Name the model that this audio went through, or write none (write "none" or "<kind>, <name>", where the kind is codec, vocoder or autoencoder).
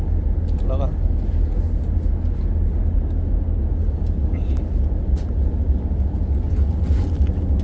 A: none